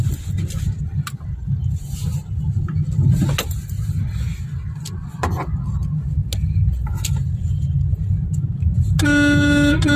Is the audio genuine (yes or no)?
yes